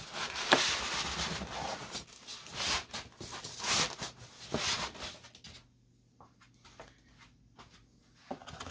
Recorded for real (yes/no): yes